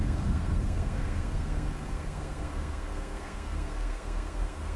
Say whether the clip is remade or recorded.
remade